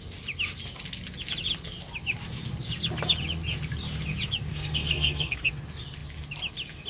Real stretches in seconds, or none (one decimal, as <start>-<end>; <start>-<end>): 0.0-4.5; 5.5-6.9

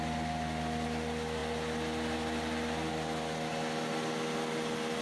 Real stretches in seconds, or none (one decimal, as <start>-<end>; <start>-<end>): 0.0-5.0

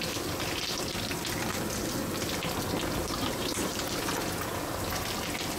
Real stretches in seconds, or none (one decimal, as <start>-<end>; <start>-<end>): 0.0-3.0; 4.1-5.6

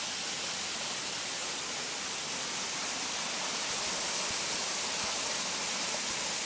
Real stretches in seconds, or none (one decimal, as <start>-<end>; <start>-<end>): 0.0-6.5

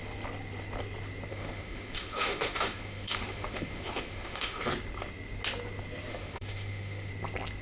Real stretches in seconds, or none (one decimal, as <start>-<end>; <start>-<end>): 0.0-1.3; 4.6-6.1; 7.1-7.6

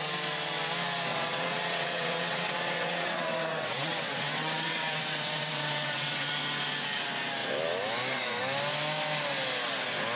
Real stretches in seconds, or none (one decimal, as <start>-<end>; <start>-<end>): 0.0-1.1; 6.3-10.2

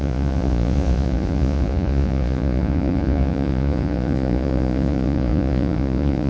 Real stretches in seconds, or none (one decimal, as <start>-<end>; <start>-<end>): none

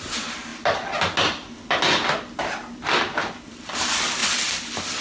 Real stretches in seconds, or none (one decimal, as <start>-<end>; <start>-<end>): 0.0-5.0